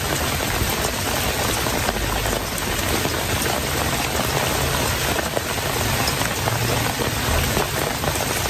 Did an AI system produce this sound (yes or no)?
no